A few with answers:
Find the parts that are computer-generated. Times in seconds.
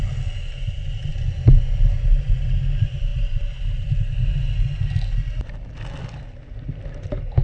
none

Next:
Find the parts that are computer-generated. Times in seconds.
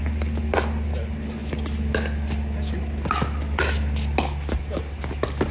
none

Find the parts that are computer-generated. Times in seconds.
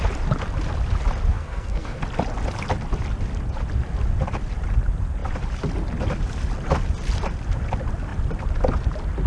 1.3-2.0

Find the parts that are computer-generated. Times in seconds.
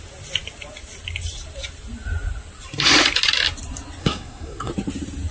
4.0-4.7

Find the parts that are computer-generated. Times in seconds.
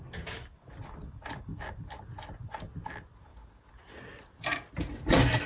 none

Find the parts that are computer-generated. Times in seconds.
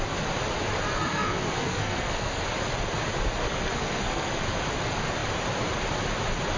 0.9-2.4; 3.5-4.3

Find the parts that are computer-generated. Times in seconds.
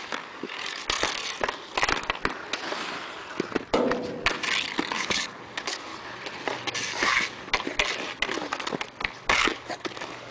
0.0-0.8; 4.8-5.9; 9.3-10.3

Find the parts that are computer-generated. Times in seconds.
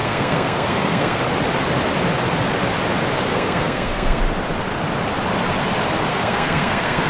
0.0-1.2; 3.3-4.2; 6.1-7.1